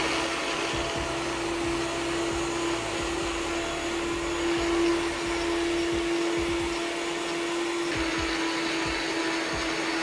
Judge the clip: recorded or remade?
recorded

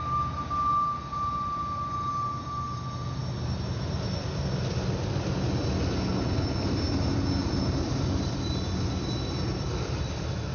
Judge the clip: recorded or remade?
recorded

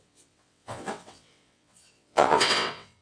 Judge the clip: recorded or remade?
remade